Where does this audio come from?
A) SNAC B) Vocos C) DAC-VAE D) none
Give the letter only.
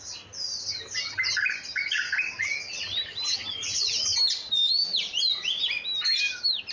D